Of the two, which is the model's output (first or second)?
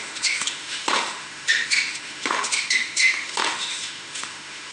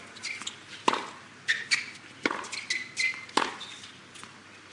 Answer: first